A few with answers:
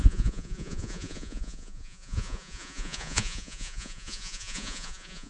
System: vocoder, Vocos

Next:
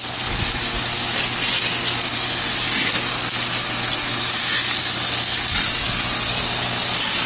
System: none